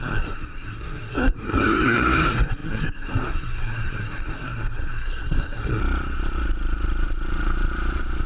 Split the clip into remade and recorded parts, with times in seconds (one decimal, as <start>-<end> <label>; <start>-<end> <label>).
0.0-5.8 remade; 5.8-8.3 recorded